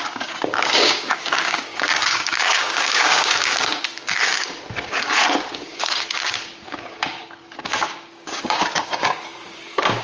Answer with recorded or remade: remade